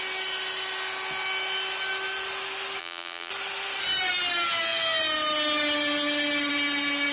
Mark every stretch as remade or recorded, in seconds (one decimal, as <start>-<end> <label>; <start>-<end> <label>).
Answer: 0.0-2.8 recorded; 2.8-3.3 remade; 3.3-7.1 recorded